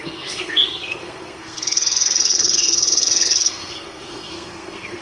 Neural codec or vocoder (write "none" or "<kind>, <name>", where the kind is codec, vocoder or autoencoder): codec, SNAC